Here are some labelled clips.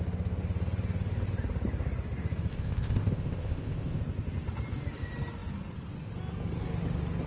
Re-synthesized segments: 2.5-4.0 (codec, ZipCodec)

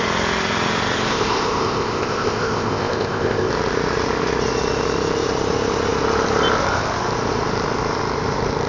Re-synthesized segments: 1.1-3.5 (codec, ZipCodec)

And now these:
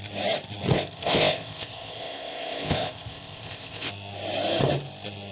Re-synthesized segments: 0.7-3.9 (codec, ZipCodec)

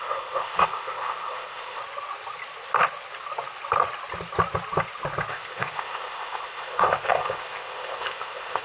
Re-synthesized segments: 0.0-1.8 (codec, ZipCodec); 5.3-8.6